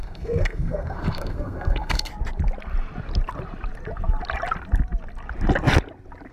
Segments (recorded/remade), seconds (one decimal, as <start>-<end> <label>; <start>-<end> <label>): 0.0-2.1 remade; 2.1-6.3 recorded